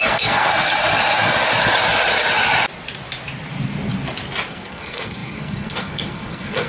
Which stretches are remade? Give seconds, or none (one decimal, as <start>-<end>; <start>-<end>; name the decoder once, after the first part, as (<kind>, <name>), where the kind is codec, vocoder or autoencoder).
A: 0.0-0.5 (codec, SNAC); 4.5-6.7